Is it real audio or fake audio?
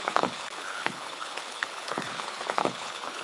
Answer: fake